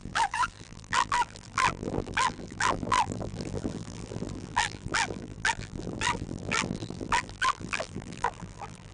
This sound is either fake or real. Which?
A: fake